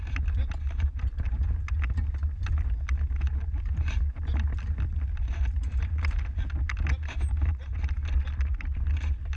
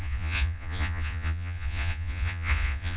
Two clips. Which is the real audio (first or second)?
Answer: first